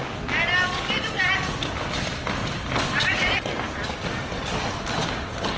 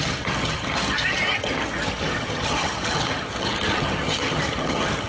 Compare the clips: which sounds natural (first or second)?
first